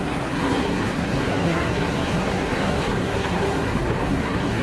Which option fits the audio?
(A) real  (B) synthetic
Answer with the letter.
B